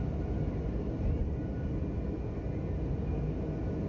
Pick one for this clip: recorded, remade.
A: recorded